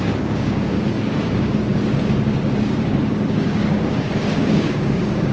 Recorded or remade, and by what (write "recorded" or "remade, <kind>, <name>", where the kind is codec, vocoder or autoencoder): remade, codec, DAC